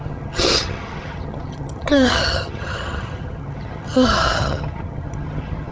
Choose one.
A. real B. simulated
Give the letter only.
B